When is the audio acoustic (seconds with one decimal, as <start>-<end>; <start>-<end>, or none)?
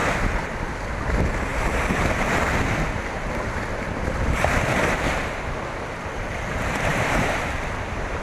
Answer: 0.0-6.9